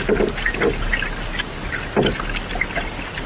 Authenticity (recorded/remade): recorded